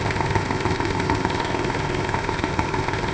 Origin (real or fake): fake